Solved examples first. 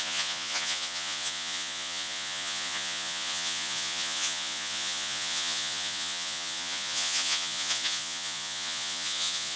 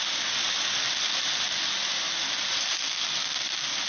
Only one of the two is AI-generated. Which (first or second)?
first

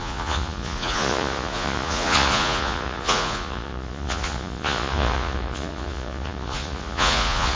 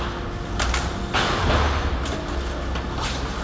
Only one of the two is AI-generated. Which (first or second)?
first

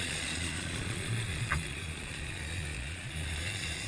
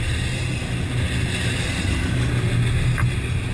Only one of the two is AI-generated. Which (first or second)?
first